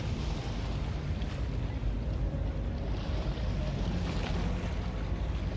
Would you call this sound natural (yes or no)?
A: yes